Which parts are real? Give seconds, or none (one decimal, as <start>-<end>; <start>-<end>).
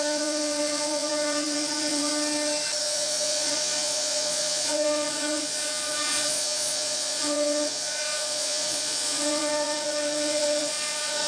2.1-2.8